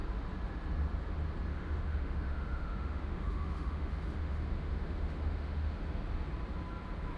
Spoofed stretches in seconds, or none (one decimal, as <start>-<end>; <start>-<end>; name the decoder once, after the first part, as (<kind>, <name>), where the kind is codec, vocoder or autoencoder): 1.5-5.8 (autoencoder, DAC-VAE)